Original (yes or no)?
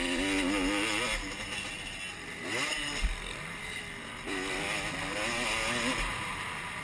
yes